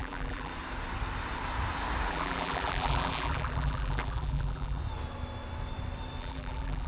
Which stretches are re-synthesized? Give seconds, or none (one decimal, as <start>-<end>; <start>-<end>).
0.0-0.5; 2.1-4.8; 6.2-6.9